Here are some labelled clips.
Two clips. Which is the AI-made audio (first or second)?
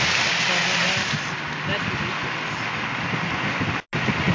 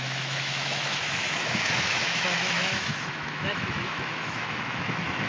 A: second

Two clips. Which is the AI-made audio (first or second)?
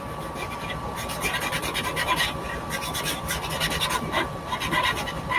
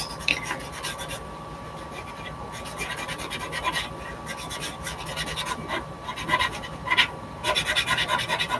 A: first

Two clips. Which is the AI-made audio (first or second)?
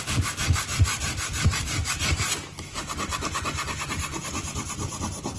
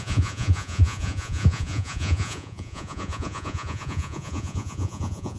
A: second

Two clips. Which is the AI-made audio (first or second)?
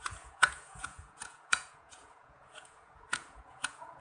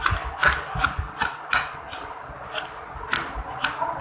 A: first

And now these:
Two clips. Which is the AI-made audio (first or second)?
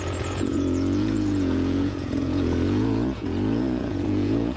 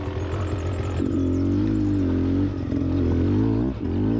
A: first